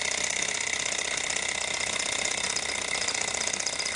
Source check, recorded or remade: recorded